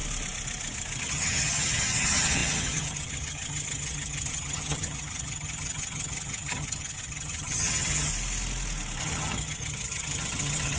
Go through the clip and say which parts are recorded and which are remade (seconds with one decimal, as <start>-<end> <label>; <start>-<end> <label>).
0.0-1.0 recorded; 1.0-8.1 remade; 8.1-9.0 recorded; 9.0-10.8 remade